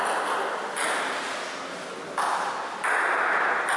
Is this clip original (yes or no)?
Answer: yes